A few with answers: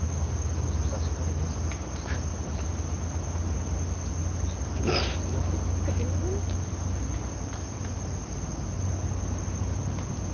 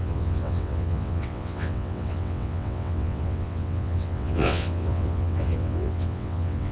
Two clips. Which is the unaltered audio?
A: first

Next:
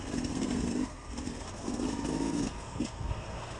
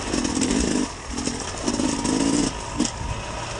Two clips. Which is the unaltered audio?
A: second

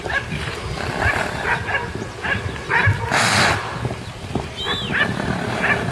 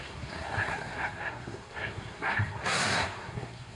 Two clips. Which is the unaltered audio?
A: first